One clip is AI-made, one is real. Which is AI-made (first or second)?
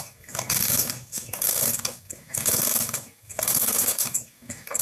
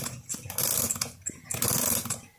first